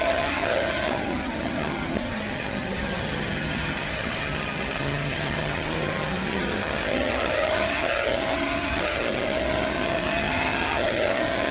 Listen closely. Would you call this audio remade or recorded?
remade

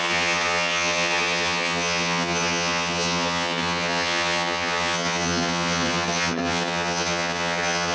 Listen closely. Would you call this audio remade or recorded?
remade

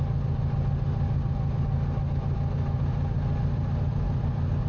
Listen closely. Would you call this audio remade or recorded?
recorded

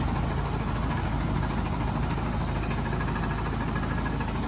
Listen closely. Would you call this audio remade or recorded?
recorded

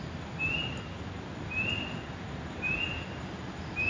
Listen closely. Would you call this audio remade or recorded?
recorded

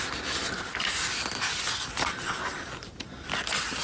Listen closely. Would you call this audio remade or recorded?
recorded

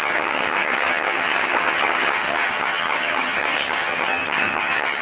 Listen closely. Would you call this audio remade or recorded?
remade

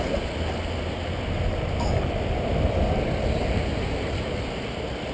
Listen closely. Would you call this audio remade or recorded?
recorded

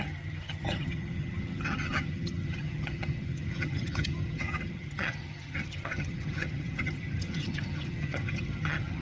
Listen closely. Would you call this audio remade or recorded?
remade